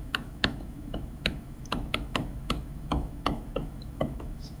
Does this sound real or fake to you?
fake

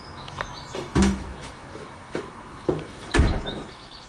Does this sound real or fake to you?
fake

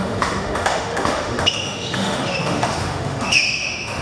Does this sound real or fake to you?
fake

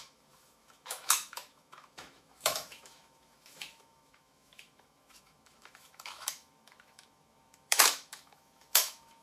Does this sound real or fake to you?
fake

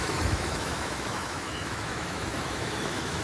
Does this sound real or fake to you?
fake